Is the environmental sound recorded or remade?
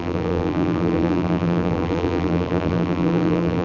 remade